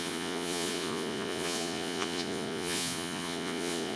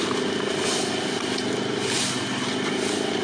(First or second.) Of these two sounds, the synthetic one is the first